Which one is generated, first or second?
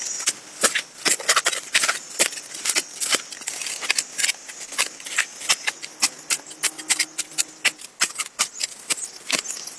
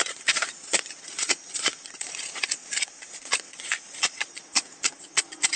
second